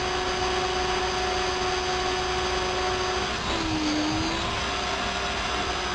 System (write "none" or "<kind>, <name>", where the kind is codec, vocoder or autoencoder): none